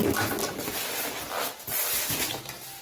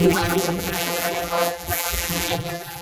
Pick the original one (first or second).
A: first